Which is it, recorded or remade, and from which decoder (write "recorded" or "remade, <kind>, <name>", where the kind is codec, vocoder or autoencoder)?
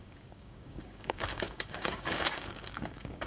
remade, codec, DAC